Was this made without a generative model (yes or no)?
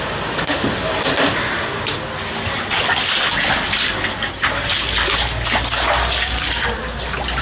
yes